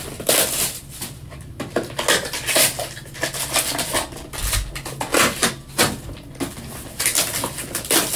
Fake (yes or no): no